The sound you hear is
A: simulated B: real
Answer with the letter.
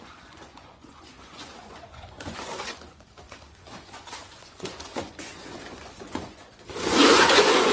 A